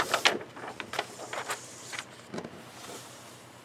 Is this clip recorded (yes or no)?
no